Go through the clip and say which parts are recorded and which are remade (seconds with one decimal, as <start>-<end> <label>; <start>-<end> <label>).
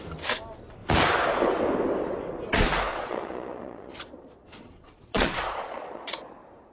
0.0-2.9 recorded; 2.9-6.3 remade; 6.3-6.7 recorded